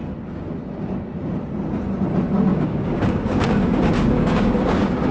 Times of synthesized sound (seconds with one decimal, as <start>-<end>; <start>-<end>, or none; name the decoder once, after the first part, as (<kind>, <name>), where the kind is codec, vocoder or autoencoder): 2.5-5.1 (codec, DAC)